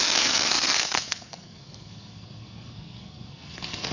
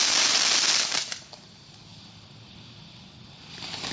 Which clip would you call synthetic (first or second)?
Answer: first